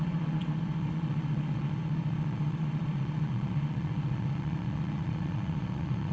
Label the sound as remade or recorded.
remade